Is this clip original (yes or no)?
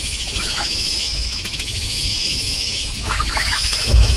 no